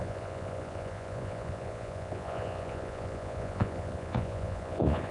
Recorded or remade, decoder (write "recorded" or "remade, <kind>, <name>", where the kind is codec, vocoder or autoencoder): remade, vocoder, Vocos